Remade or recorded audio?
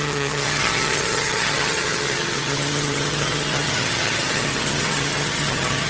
remade